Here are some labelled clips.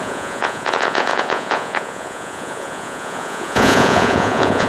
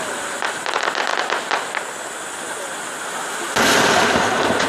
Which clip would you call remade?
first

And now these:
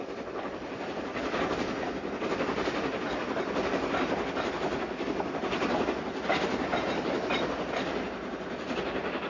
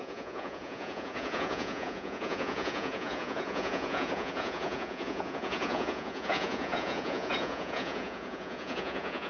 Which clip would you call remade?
second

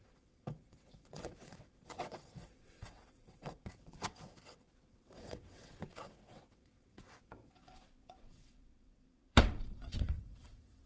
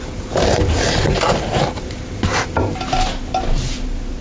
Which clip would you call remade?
first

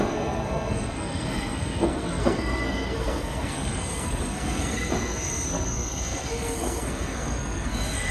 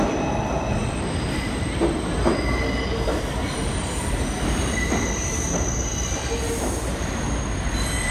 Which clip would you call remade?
first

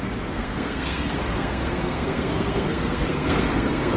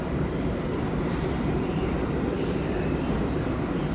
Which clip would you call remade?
first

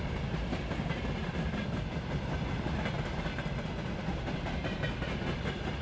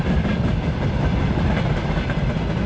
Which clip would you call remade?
second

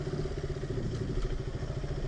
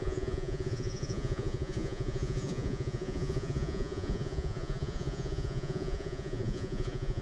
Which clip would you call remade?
second